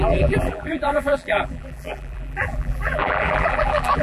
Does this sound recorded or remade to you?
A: remade